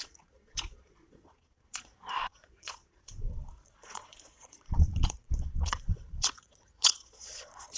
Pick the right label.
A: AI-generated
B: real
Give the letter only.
A